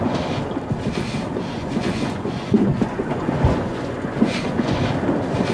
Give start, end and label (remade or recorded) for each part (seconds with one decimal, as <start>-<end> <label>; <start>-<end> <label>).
0.0-1.5 recorded; 1.5-4.8 remade; 4.8-5.5 recorded